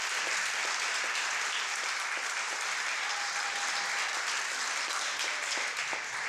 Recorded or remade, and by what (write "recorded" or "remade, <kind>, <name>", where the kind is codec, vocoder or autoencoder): recorded